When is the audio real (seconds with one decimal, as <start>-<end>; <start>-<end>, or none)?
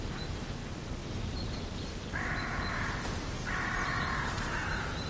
0.0-1.9; 2.7-5.1